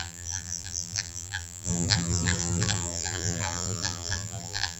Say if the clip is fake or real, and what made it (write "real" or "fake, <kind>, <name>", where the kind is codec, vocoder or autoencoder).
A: fake, vocoder, BigVGAN v2